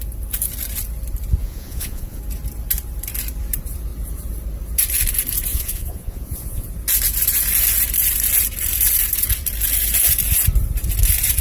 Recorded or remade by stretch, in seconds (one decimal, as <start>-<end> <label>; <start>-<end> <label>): 0.0-1.4 recorded; 1.4-2.2 remade; 2.2-5.5 recorded; 5.5-6.7 remade; 6.7-11.4 recorded